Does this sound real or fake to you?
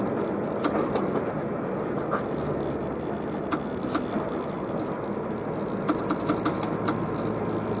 real